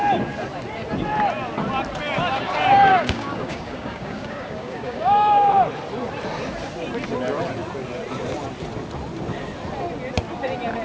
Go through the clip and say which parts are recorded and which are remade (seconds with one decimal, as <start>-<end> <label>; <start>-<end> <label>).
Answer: 0.0-2.9 recorded; 2.9-5.5 remade; 5.5-10.8 recorded